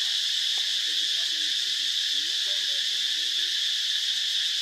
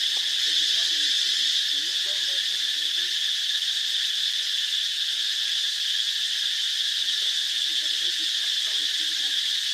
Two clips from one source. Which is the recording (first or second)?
first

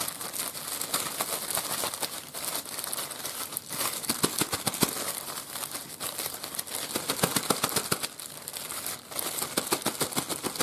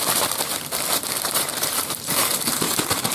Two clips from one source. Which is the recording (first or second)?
first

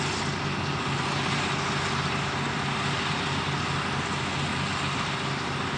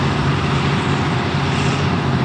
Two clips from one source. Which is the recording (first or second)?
first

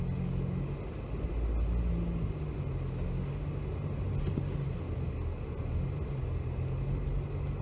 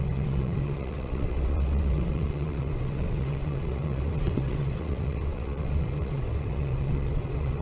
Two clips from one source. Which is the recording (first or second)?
first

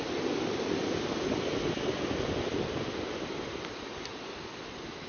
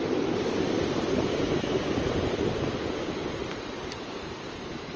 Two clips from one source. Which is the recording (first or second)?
first